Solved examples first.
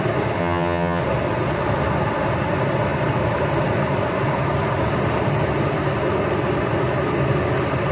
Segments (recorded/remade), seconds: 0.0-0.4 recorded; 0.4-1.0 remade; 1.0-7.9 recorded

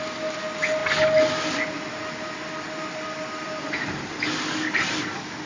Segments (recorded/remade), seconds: 0.0-5.5 recorded

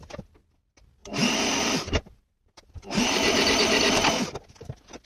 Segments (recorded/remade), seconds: 0.0-1.0 recorded; 1.0-4.0 remade; 4.0-5.0 recorded

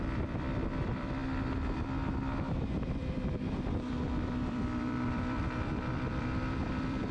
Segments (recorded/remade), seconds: 0.0-1.2 remade; 1.2-2.5 recorded; 2.5-7.1 remade

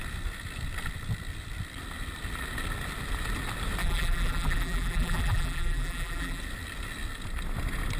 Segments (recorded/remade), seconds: 0.0-3.8 recorded; 3.8-6.4 remade; 6.4-8.0 recorded

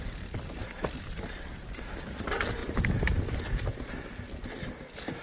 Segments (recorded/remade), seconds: 0.0-0.6 recorded; 0.6-2.2 remade; 2.2-2.6 recorded; 2.6-3.3 remade; 3.3-5.2 recorded